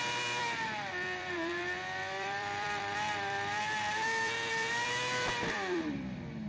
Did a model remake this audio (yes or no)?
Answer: yes